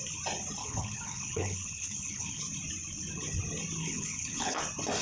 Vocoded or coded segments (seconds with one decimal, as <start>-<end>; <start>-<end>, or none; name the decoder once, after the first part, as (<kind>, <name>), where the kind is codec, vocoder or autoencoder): 0.6-2.4 (codec, HILCodec); 3.8-4.6